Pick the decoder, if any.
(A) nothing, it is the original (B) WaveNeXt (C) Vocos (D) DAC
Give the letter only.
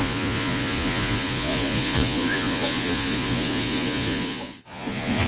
C